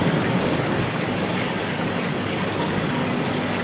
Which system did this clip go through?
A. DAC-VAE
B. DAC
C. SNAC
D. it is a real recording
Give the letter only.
B